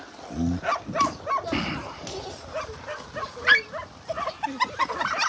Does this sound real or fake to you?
real